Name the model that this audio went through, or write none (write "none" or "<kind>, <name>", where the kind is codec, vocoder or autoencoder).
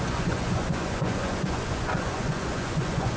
vocoder, Vocos